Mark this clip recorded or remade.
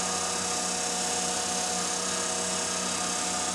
recorded